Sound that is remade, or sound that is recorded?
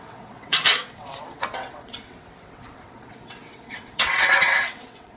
remade